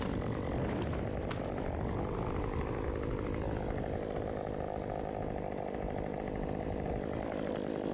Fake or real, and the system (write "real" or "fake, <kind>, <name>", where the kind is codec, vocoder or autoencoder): real